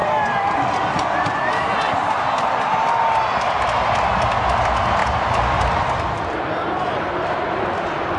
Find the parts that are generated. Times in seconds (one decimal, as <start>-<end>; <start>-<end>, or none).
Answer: 0.0-2.6; 5.0-6.9